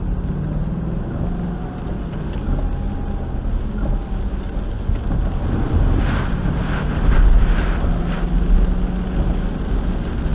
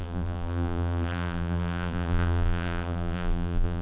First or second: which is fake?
second